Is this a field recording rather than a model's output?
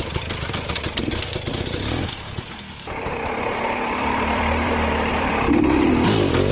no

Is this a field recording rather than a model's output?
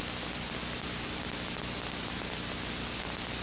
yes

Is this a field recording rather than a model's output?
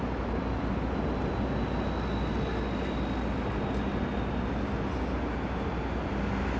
yes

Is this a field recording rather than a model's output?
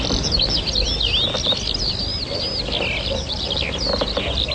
yes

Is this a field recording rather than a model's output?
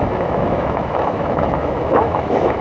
no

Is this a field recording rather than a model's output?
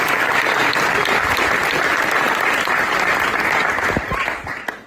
yes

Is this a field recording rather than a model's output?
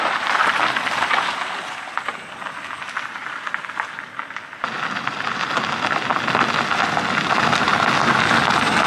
yes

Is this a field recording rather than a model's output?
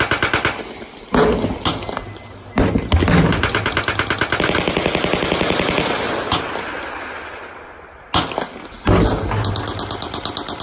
yes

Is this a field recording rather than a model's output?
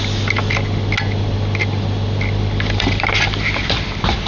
yes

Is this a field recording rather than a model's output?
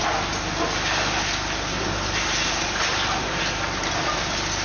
yes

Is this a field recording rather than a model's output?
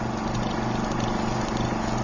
yes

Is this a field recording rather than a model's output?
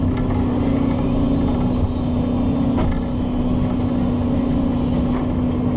yes